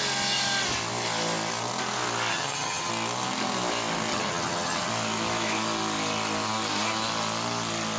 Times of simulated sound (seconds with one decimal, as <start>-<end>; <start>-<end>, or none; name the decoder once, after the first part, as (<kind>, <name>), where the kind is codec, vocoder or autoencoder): 2.3-2.9 (vocoder, HiFi-GAN); 4.1-4.9